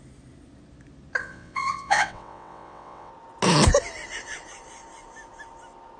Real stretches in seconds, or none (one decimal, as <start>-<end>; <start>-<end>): 0.0-1.2; 3.1-6.0